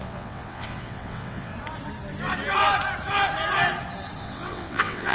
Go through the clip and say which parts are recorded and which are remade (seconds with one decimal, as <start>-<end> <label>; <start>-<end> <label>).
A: 0.0-1.5 remade; 1.5-4.2 recorded; 4.2-5.1 remade